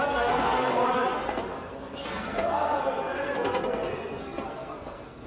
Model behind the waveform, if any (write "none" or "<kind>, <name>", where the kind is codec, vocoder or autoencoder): codec, SNAC